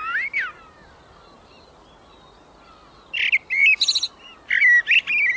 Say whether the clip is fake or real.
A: real